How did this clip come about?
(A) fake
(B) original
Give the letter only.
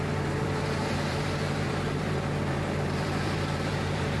A